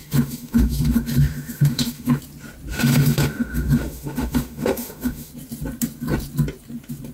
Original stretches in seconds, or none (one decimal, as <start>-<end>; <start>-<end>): 2.2-2.7; 5.3-7.1